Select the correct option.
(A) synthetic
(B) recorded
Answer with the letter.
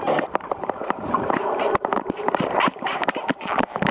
A